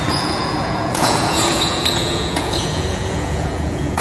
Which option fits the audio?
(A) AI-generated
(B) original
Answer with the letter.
A